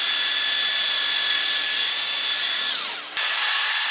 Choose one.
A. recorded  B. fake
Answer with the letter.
A